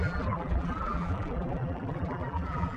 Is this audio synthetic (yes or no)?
yes